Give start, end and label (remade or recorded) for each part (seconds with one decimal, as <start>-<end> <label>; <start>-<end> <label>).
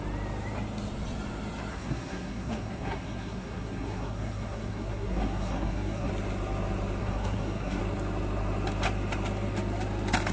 0.0-1.7 recorded; 1.7-6.1 remade; 6.1-7.0 recorded; 7.0-7.8 remade; 7.8-10.3 recorded